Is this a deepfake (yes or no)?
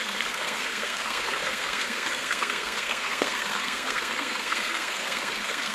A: yes